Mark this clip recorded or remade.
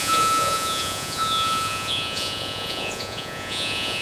remade